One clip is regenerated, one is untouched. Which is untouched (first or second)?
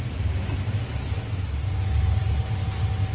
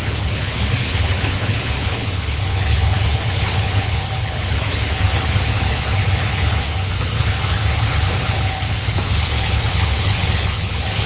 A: first